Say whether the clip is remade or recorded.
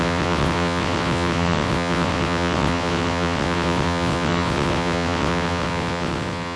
remade